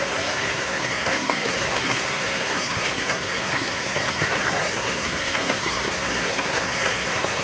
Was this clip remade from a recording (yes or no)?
yes